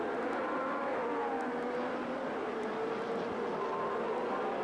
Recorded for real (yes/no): yes